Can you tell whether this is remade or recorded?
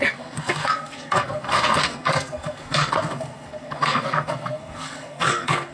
remade